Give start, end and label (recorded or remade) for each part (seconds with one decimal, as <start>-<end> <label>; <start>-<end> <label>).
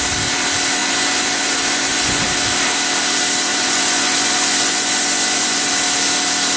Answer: 0.0-0.8 recorded; 0.8-2.2 remade; 2.2-3.5 recorded; 3.5-5.7 remade; 5.7-6.6 recorded